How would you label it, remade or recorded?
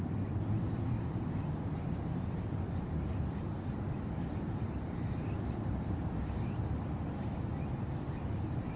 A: remade